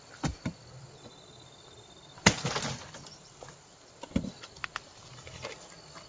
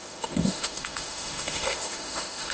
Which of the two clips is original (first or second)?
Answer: first